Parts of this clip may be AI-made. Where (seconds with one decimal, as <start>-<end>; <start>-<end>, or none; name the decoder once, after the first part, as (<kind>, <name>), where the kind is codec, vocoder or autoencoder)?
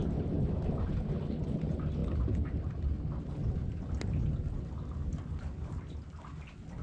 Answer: none